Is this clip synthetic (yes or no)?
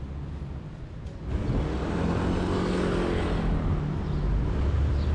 no